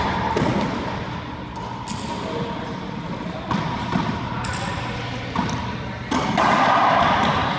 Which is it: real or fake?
real